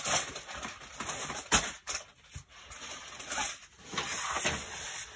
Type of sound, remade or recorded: recorded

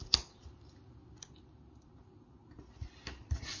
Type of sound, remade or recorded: recorded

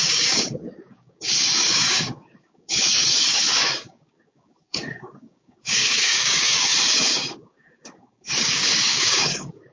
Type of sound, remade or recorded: remade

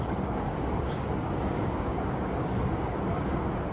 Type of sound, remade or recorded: remade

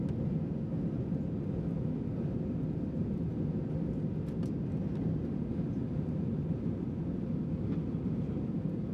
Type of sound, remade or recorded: recorded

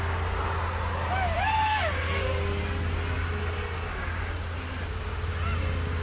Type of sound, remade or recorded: recorded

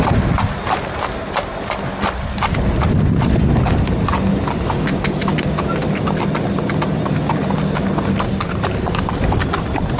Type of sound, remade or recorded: recorded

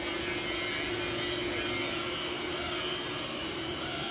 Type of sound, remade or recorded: recorded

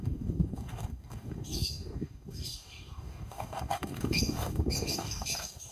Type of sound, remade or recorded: remade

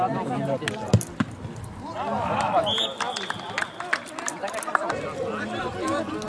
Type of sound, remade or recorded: recorded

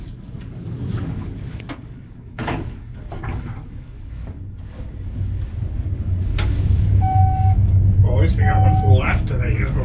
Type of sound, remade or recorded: remade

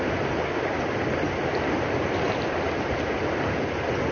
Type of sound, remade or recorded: recorded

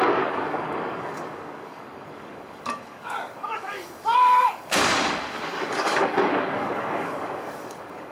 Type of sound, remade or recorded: remade